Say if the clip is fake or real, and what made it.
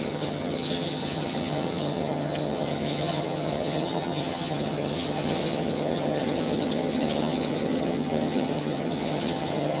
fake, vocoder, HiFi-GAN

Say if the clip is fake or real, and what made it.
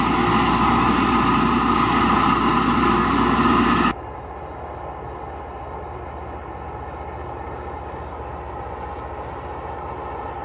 real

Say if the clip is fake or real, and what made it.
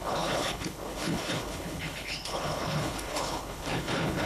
fake, codec, HILCodec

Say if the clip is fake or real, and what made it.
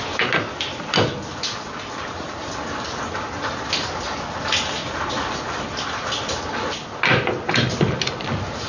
real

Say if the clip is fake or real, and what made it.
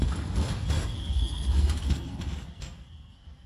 fake, codec, SNAC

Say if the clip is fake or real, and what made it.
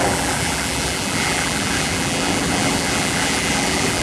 fake, vocoder, BigVGAN v2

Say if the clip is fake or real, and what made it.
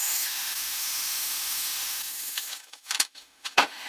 fake, autoencoder, DAC-VAE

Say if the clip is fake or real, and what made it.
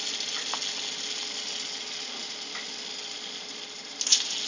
real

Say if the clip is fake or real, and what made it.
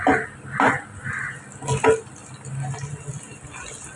real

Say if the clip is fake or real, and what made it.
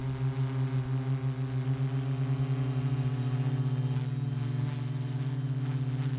real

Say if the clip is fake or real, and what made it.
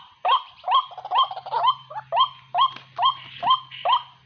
real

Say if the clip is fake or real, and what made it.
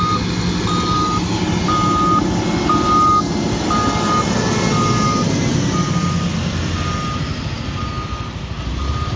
real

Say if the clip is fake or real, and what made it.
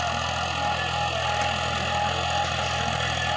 real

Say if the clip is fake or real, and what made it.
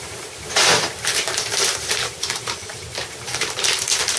fake, vocoder, BigVGAN v2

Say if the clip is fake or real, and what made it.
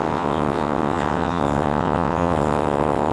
fake, vocoder, WaveNeXt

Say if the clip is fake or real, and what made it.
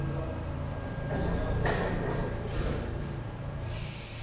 real